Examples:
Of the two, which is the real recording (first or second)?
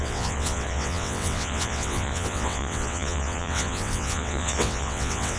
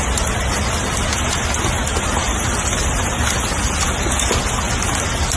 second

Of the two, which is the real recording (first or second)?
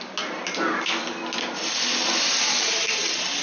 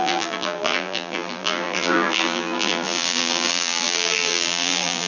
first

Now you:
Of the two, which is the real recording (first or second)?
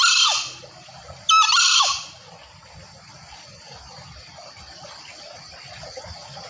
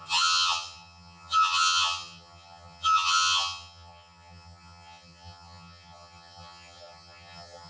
first